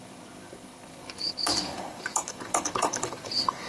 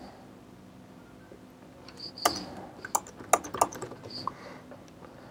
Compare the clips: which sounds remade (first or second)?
first